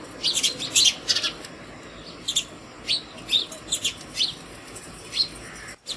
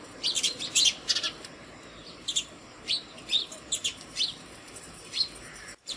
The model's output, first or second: second